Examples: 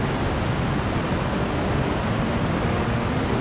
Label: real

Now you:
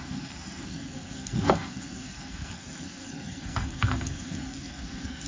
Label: fake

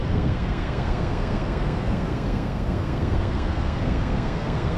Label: fake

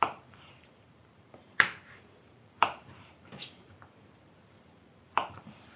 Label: fake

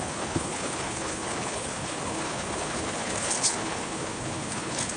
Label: fake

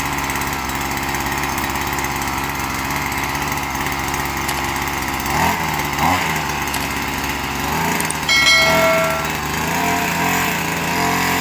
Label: real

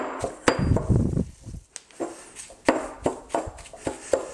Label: real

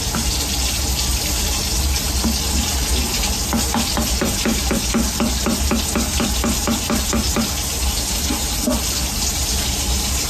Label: real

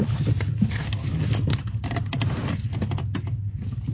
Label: real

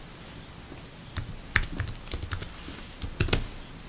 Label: real